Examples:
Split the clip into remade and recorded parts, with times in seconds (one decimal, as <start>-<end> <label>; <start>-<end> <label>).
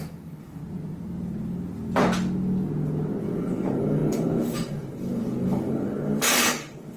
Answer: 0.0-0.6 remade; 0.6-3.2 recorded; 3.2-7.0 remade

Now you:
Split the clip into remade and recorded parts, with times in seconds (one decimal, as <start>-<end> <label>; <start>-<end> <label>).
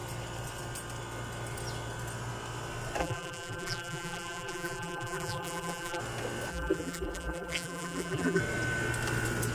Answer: 0.0-3.0 recorded; 3.0-6.0 remade; 6.0-6.5 recorded; 6.5-8.4 remade; 8.4-9.5 recorded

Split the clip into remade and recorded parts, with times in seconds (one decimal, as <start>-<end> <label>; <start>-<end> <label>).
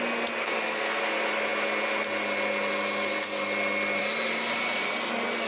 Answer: 0.0-0.4 recorded; 0.4-1.0 remade; 1.0-5.5 recorded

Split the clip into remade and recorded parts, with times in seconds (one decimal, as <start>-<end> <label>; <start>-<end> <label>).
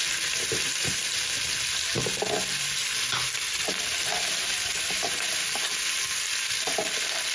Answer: 0.0-7.3 recorded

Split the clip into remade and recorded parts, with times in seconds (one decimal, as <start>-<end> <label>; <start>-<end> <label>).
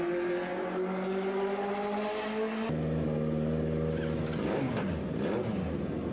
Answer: 0.0-6.1 recorded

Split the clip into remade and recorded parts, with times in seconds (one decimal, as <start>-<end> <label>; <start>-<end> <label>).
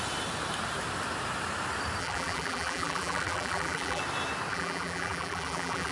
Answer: 0.0-2.0 recorded; 2.0-4.0 remade; 4.0-4.5 recorded; 4.5-5.9 remade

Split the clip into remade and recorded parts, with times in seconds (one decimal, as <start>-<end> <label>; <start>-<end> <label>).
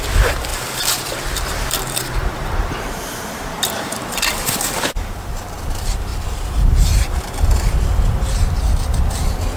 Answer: 0.0-0.5 recorded; 0.5-5.6 remade; 5.6-6.1 recorded; 6.1-7.3 remade; 7.3-9.6 recorded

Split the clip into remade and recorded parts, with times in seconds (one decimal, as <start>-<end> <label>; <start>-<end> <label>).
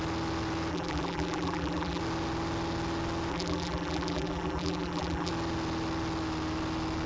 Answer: 0.0-0.7 recorded; 0.7-2.0 remade; 2.0-3.3 recorded; 3.3-5.3 remade; 5.3-7.1 recorded